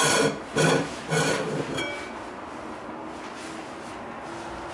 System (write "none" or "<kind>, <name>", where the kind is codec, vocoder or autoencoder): none